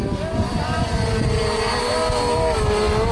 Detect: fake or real real